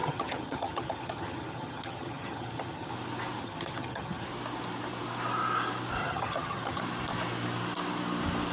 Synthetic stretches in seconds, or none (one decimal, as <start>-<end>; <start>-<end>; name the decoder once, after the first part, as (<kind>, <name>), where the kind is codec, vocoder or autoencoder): 0.0-2.9 (vocoder, HiFi-GAN); 3.4-4.3; 6.0-6.8